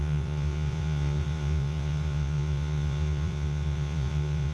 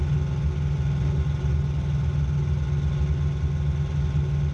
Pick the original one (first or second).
second